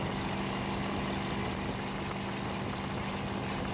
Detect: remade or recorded recorded